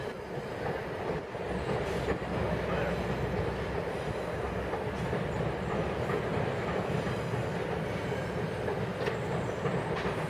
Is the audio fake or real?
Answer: real